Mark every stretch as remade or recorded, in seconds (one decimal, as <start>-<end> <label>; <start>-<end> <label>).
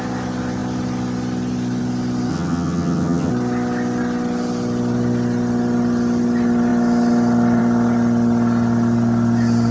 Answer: 0.0-2.3 recorded; 2.3-3.3 remade; 3.3-9.7 recorded